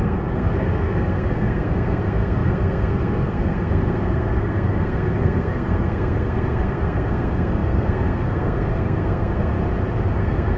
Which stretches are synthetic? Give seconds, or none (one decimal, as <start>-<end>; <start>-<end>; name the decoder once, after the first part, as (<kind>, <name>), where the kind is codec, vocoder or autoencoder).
0.0-9.5 (codec, SNAC); 10.2-10.6